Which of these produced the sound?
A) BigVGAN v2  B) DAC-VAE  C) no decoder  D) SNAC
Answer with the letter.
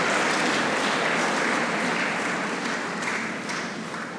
C